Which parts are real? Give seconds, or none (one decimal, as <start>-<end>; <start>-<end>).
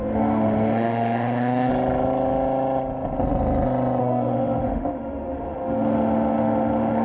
1.7-4.0